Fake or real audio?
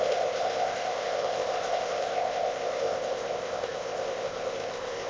fake